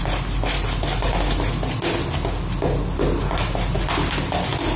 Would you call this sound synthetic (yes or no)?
no